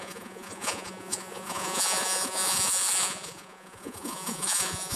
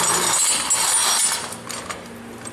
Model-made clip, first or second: first